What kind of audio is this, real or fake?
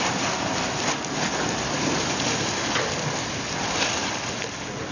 real